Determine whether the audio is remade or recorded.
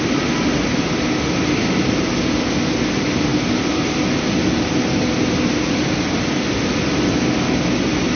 recorded